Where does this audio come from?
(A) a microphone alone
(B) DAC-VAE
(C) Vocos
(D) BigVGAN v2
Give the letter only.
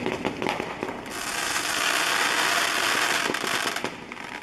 A